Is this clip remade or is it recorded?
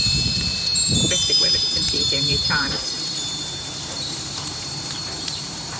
remade